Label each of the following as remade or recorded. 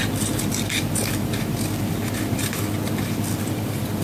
remade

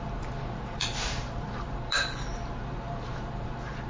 remade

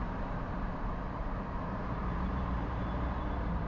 remade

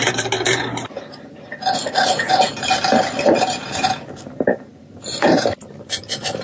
remade